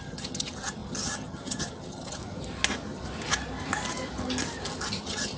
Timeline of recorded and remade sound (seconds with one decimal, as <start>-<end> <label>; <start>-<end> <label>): 0.0-2.2 remade; 2.2-5.0 recorded; 5.0-5.4 remade